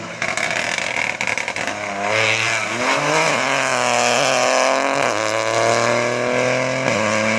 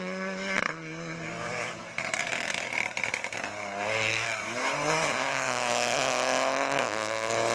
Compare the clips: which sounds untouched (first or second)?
first